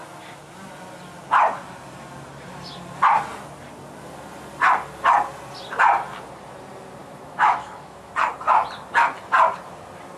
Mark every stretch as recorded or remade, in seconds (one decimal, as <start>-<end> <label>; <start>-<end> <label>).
0.0-7.0 recorded; 7.0-8.1 remade; 8.1-10.2 recorded